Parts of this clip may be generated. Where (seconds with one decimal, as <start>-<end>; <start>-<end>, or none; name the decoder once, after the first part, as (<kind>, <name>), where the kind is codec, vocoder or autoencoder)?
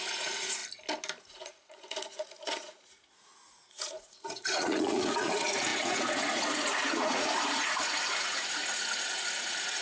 0.0-0.6 (vocoder, Vocos); 1.2-9.8